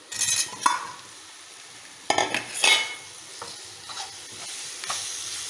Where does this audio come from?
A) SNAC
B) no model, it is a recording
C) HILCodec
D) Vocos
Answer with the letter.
B